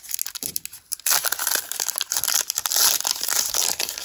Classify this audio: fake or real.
real